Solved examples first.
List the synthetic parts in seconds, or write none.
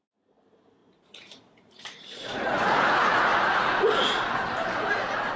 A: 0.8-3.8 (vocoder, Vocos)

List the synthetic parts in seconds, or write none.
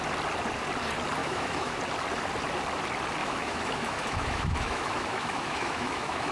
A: 1.2-1.8 (autoencoder, DAC-VAE); 3.2-6.3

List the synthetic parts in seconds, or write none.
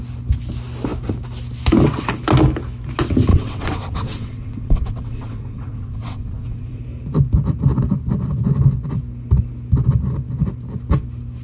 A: 3.3-6.8 (vocoder, WaveNeXt)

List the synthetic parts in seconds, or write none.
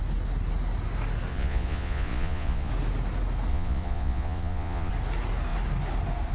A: 1.3-2.7 (vocoder, Vocos); 3.5-4.9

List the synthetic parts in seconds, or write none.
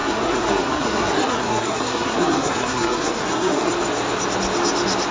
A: 0.0-3.7 (codec, SNAC)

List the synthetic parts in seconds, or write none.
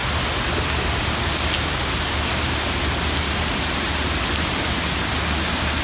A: none